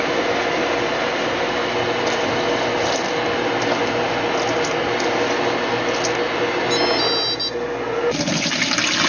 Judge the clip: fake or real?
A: real